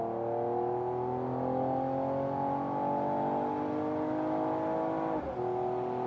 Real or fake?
real